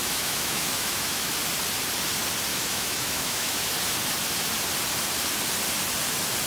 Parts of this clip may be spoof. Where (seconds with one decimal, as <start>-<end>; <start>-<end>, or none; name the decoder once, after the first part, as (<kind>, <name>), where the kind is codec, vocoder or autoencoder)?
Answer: 0.0-1.3 (autoencoder, DAC-VAE); 2.5-3.7